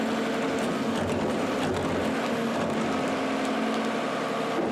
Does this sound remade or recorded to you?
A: recorded